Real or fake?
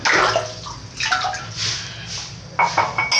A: real